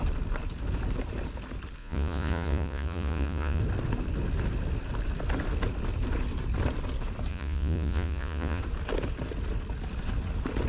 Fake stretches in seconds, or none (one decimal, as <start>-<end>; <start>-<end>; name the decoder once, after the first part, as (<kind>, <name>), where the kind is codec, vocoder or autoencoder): 1.8-3.6 (vocoder, Vocos); 7.3-8.6